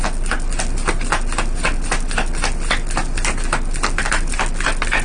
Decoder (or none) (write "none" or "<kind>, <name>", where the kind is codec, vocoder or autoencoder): none